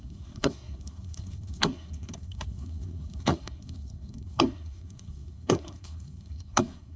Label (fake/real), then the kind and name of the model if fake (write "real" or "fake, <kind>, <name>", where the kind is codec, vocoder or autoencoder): fake, codec, SNAC